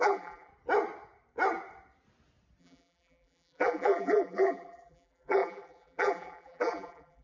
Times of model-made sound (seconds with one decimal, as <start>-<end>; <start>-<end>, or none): 0.0-0.5; 2.6-7.2

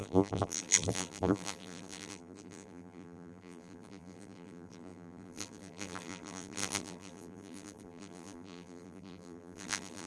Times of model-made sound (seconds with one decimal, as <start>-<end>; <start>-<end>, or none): 0.0-10.1

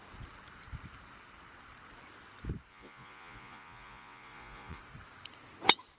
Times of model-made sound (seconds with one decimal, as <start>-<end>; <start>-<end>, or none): 2.7-4.8

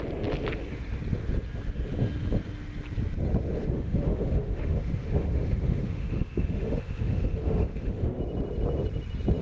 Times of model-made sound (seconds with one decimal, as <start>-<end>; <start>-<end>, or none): 3.6-8.2

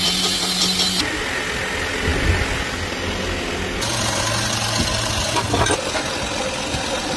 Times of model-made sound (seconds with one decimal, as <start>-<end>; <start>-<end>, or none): none

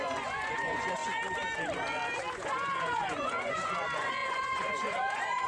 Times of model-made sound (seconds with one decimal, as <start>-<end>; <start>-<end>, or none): 0.0-1.0; 2.3-5.5